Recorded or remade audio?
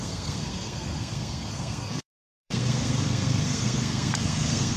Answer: remade